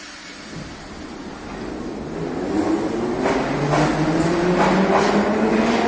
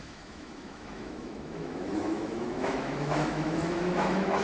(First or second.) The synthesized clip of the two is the second